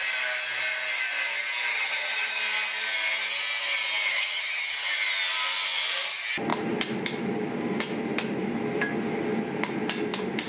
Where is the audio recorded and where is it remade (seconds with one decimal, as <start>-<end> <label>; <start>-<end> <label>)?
0.0-1.7 recorded; 1.7-2.4 remade; 2.4-4.1 recorded; 4.1-4.9 remade; 4.9-10.5 recorded